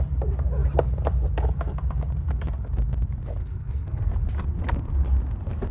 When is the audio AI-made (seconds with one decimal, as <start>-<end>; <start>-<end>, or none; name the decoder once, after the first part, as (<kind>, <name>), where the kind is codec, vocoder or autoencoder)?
3.4-4.1 (codec, SNAC)